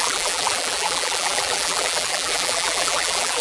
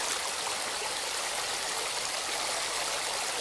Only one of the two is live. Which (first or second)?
second